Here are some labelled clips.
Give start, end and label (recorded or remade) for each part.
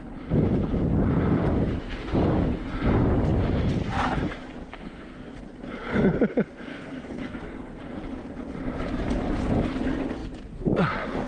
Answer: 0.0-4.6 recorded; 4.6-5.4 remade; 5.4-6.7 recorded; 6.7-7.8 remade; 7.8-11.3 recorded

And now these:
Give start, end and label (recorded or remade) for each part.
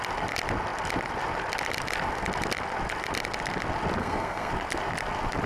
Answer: 0.0-4.0 recorded; 4.0-4.5 remade; 4.5-5.5 recorded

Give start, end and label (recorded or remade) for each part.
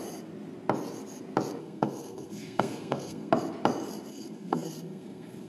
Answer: 0.0-1.6 recorded; 1.6-3.3 remade; 3.3-4.1 recorded; 4.1-5.5 remade